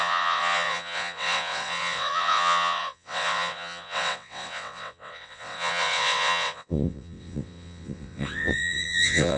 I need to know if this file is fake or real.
fake